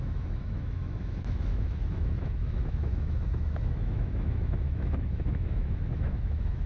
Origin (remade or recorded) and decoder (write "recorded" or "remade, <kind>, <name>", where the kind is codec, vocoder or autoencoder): remade, autoencoder, DAC-VAE